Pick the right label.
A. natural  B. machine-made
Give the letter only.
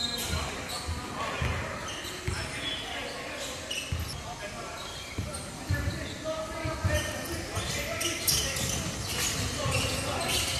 A